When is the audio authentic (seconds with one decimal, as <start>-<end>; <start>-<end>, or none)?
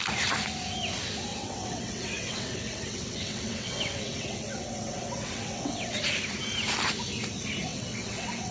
0.0-1.3; 5.9-7.7